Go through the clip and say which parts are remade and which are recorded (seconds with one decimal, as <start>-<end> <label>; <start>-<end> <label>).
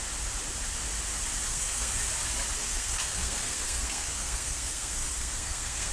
0.0-1.5 recorded; 1.5-2.0 remade; 2.0-2.6 recorded; 2.6-5.9 remade